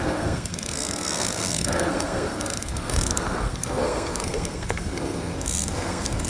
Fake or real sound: fake